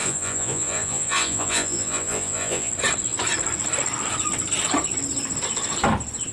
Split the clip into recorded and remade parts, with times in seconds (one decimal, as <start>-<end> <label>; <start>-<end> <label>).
0.0-2.7 remade; 2.7-6.3 recorded